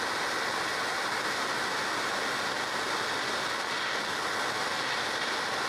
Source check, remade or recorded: recorded